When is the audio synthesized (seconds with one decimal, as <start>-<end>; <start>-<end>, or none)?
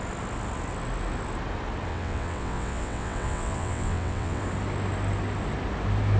1.9-4.4